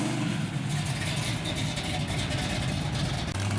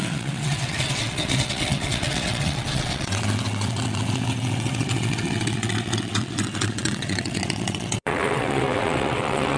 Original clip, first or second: first